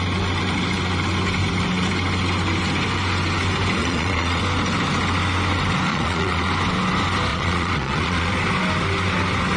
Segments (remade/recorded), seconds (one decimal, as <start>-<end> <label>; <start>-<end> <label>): 0.0-3.8 recorded; 3.8-4.4 remade; 4.4-5.9 recorded; 5.9-6.5 remade; 6.5-7.3 recorded; 7.3-8.3 remade; 8.3-9.6 recorded